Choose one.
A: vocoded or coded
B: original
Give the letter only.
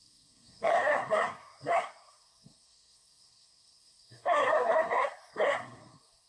A